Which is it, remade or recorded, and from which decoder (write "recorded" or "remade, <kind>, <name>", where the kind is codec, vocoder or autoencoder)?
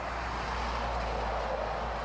recorded